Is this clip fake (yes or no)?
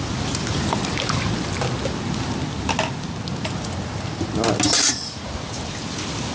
no